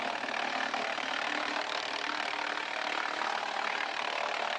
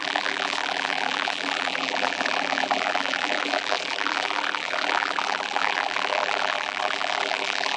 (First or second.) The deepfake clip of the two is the second